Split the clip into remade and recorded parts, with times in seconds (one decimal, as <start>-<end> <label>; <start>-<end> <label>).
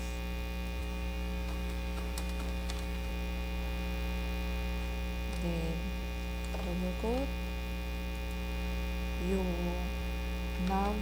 0.0-0.8 recorded; 0.8-3.1 remade; 3.1-11.0 recorded